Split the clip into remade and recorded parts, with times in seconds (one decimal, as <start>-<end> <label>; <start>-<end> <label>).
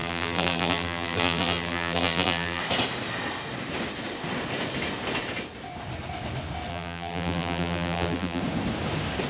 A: 0.0-2.6 remade; 2.6-6.7 recorded; 6.7-8.4 remade; 8.4-9.3 recorded